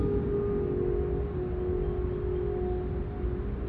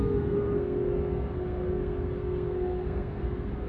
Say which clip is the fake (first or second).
second